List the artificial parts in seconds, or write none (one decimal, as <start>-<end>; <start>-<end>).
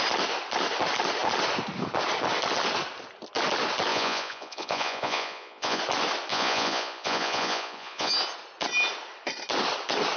3.9-5.8; 6.3-8.1